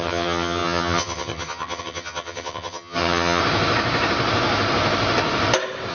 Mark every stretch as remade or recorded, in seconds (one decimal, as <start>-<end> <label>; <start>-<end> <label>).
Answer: 0.0-3.4 remade; 3.4-5.9 recorded